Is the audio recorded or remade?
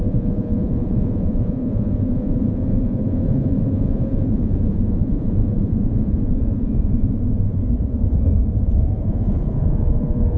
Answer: remade